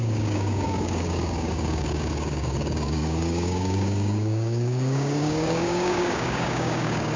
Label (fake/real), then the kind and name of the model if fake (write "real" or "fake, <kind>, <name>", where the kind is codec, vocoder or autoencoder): fake, codec, DAC